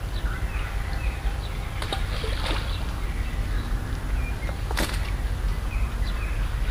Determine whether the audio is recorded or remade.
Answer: recorded